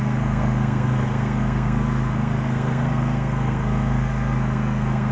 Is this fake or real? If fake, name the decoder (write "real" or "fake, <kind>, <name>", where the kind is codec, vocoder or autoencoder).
fake, codec, SNAC